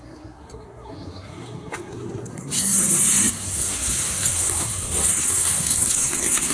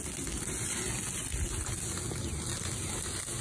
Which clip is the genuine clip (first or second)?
second